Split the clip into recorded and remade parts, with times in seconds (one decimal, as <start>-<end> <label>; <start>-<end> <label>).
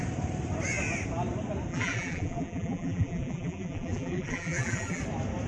0.0-1.7 recorded; 1.7-5.0 remade; 5.0-5.5 recorded